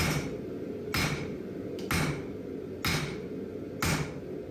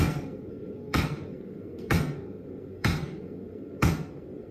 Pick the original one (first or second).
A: first